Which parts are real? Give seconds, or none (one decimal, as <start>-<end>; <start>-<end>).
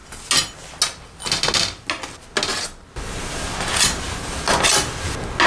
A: 0.0-5.5